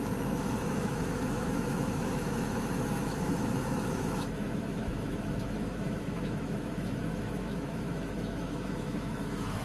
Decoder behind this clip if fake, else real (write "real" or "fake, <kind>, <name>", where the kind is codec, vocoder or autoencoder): fake, autoencoder, DAC-VAE